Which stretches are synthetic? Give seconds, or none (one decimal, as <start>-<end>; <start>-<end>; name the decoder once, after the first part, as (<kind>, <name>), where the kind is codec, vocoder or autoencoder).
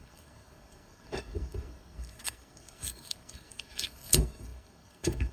0.0-5.3 (codec, SNAC)